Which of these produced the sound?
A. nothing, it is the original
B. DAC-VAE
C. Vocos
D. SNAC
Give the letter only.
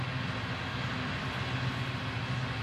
A